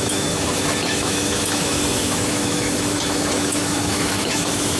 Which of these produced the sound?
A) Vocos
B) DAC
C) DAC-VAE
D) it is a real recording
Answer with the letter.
C